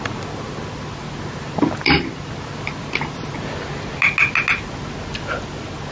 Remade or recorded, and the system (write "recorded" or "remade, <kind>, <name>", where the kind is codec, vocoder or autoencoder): recorded